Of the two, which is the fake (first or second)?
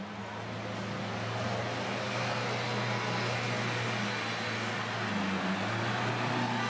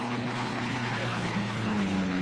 second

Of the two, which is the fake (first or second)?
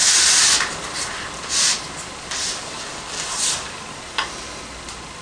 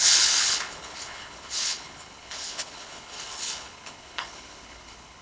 second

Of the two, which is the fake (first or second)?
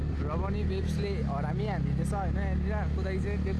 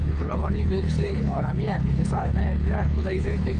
second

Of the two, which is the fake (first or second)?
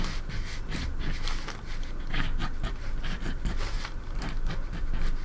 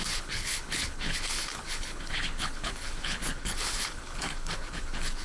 second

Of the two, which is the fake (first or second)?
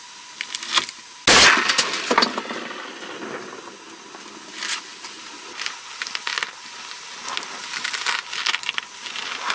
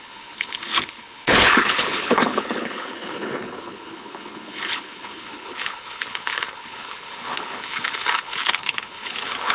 second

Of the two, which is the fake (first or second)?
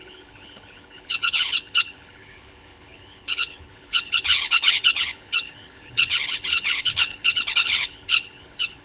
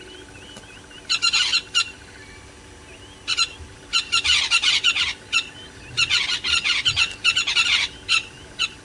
first